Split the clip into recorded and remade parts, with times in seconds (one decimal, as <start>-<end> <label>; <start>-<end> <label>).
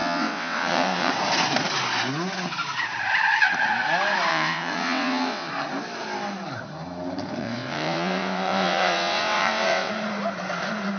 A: 0.0-1.1 remade; 1.1-4.3 recorded; 4.3-5.5 remade; 5.5-7.4 recorded; 7.4-9.9 remade; 9.9-11.0 recorded